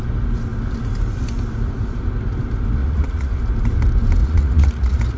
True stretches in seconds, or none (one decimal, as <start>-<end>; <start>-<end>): 0.0-2.8; 3.4-4.2